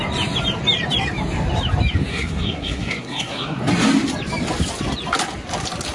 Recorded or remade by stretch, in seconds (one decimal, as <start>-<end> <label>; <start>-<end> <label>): 0.0-2.1 recorded; 2.1-3.6 remade; 3.6-5.9 recorded

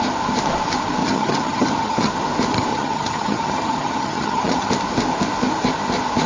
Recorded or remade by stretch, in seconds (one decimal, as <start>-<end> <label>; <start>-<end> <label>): 0.0-1.0 recorded; 1.0-2.1 remade; 2.1-2.7 recorded; 2.7-4.7 remade; 4.7-6.3 recorded

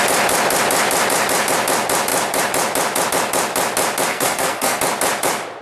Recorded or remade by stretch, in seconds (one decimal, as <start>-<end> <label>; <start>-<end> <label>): 0.0-4.1 recorded; 4.1-4.8 remade; 4.8-5.6 recorded

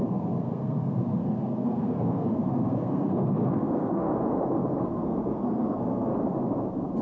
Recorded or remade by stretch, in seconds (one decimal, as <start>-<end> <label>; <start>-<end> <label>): 0.0-4.1 remade; 4.1-4.8 recorded; 4.8-6.1 remade; 6.1-7.0 recorded

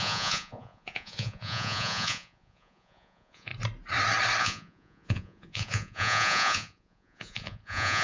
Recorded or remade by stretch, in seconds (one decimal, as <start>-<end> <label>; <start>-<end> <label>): 0.0-3.5 remade; 3.5-4.4 recorded; 4.4-8.0 remade

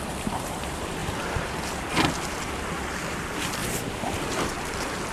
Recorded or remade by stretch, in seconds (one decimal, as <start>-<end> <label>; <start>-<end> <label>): 0.0-3.6 remade; 3.6-4.1 recorded; 4.1-5.1 remade

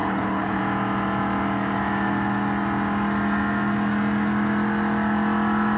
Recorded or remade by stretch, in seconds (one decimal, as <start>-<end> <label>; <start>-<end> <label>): 0.0-0.6 remade; 0.6-5.8 recorded

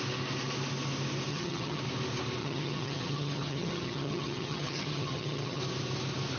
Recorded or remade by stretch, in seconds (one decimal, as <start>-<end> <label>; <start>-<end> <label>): 0.0-1.3 recorded; 1.3-1.8 remade; 1.8-2.4 recorded; 2.4-5.6 remade; 5.6-6.4 recorded